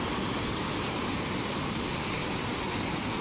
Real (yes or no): yes